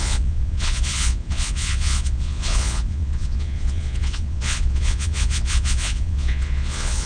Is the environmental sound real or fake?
fake